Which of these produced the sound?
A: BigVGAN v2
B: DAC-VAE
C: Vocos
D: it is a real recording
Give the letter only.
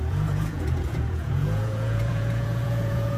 C